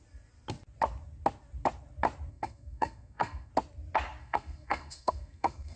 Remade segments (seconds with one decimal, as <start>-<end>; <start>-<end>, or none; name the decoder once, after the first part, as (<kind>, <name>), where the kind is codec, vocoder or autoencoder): 2.3-3.5 (codec, SNAC); 4.2-5.8